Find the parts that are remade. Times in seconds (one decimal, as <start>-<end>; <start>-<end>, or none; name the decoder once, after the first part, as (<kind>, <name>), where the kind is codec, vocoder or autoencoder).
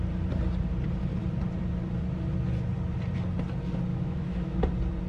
3.9-4.6 (autoencoder, DAC-VAE)